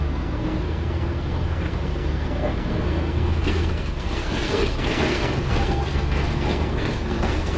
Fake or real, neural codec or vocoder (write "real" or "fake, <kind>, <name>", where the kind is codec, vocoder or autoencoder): fake, codec, SNAC